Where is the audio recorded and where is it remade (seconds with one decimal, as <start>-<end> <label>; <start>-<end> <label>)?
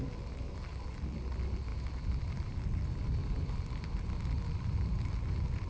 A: 0.0-5.7 recorded